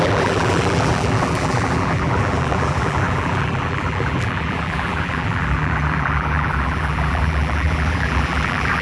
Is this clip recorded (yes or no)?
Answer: no